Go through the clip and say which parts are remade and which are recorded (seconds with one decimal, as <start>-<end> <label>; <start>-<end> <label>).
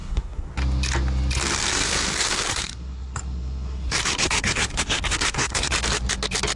0.0-0.5 remade; 0.5-1.7 recorded; 1.7-5.7 remade; 5.7-6.6 recorded